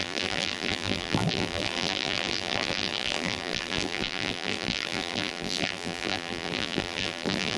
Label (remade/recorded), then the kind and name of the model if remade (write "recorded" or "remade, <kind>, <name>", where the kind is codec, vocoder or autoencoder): remade, vocoder, BigVGAN v2